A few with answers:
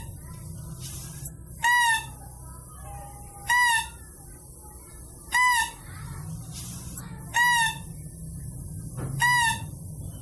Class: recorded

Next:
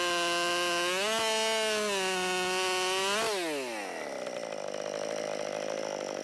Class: recorded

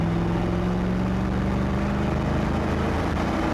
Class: recorded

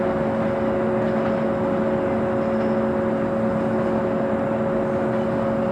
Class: recorded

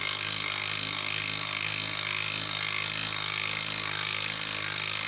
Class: recorded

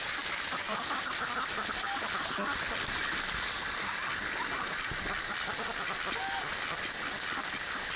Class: recorded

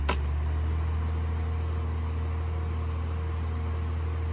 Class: recorded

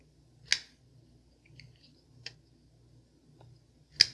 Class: recorded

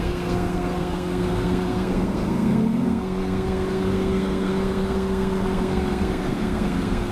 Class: remade